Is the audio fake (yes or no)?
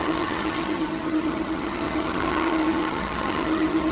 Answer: yes